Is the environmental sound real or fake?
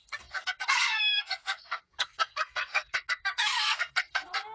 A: fake